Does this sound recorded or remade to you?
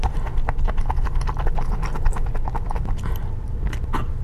recorded